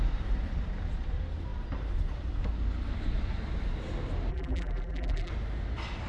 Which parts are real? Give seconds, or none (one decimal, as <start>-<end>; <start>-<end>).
0.0-4.3; 5.3-6.1